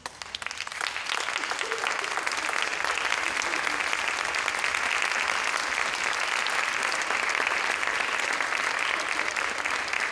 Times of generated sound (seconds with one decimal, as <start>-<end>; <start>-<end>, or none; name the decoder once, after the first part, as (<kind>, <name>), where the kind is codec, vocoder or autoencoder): none